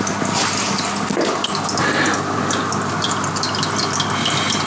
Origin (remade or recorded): recorded